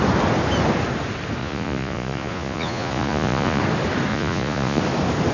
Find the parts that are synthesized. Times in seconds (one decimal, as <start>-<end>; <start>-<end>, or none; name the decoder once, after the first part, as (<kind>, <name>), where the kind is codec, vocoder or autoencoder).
1.4-3.6 (vocoder, Vocos); 4.1-4.8